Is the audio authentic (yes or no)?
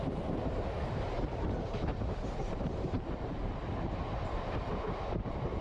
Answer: no